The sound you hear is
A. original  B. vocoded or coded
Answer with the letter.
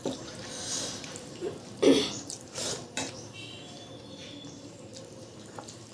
B